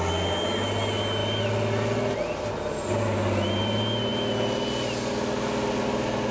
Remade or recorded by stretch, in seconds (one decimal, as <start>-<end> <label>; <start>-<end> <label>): 0.0-6.3 recorded